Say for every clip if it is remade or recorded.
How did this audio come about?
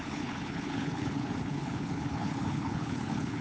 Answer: remade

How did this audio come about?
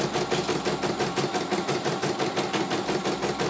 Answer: recorded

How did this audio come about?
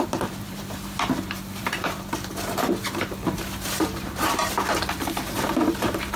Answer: remade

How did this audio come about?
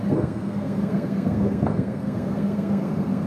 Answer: remade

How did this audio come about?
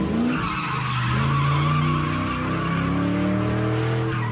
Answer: recorded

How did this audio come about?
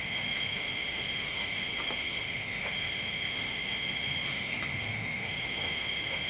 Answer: remade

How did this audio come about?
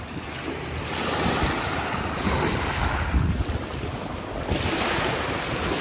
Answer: recorded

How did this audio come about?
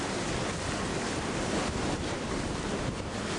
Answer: recorded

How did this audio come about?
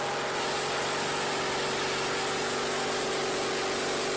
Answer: recorded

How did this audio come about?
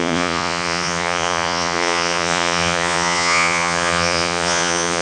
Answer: remade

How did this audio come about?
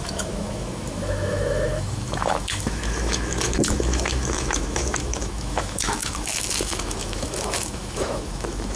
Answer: remade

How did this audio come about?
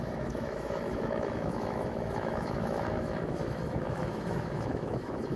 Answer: remade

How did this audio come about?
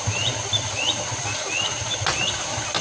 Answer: recorded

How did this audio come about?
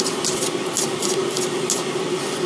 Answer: recorded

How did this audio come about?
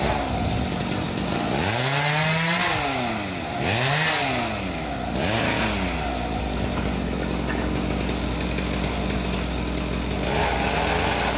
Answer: recorded